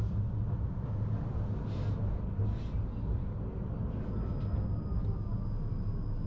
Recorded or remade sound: recorded